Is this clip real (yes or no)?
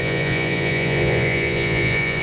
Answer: no